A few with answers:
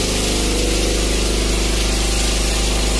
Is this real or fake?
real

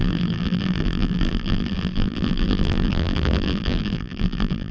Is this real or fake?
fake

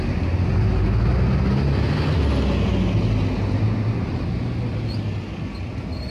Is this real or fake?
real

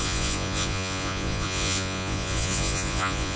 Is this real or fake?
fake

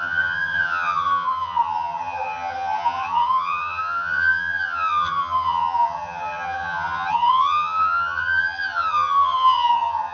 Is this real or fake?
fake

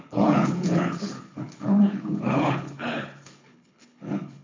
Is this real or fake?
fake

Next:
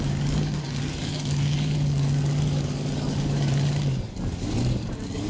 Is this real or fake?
fake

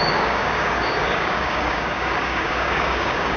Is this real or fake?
fake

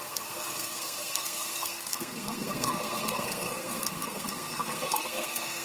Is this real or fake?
fake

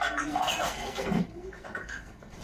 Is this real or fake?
fake